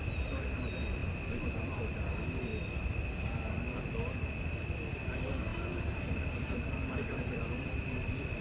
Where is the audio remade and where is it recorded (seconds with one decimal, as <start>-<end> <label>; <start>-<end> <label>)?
0.0-1.0 recorded; 1.0-1.7 remade; 1.7-5.5 recorded; 5.5-7.7 remade; 7.7-8.4 recorded